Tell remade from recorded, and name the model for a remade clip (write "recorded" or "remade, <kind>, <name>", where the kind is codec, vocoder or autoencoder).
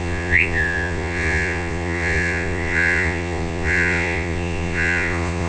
remade, vocoder, Vocos